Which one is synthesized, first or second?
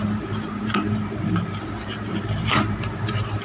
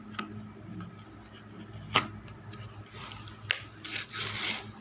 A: first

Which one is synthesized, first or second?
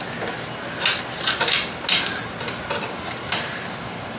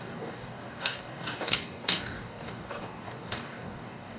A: second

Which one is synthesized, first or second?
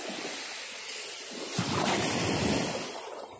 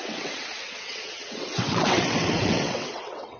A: second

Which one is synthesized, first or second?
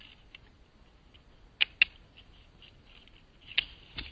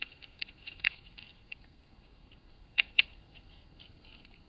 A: second